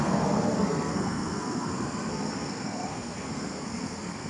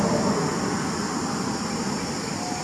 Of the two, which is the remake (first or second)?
first